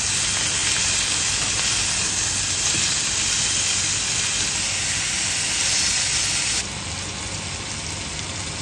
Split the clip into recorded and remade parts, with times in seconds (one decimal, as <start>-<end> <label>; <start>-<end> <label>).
0.0-8.6 recorded